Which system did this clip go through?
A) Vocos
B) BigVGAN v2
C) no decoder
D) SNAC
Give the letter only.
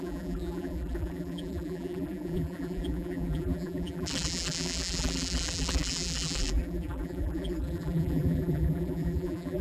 B